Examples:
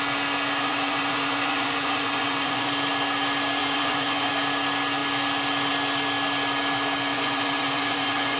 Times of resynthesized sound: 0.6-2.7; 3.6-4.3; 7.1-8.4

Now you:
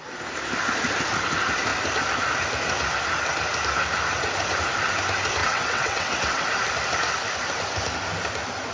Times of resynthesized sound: 5.4-6.4